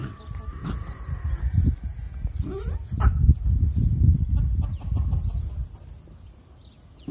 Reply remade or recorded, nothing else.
recorded